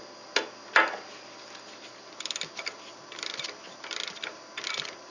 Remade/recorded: recorded